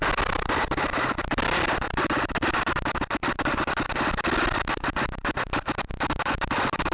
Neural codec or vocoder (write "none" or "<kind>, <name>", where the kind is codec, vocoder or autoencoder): none